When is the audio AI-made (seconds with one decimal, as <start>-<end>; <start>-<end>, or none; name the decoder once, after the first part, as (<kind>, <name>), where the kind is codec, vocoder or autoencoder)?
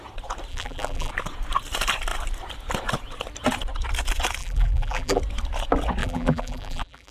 0.5-1.1 (vocoder, BigVGAN v2); 4.4-5.2; 6.0-7.1